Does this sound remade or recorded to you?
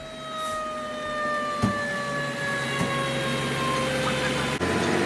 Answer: recorded